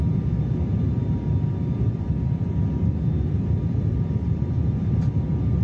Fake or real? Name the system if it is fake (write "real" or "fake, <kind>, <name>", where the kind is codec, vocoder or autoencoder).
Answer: real